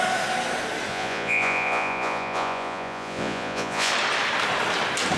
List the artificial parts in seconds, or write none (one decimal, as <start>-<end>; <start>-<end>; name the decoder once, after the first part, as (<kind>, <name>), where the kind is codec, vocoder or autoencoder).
0.9-3.9 (vocoder, Vocos)